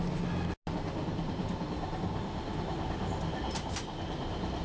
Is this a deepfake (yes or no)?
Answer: no